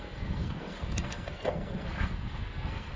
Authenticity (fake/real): fake